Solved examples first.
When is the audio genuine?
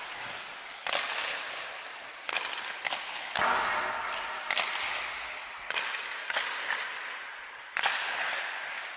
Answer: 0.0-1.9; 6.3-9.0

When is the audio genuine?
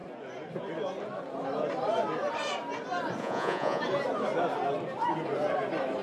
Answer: 0.0-3.2; 3.8-6.0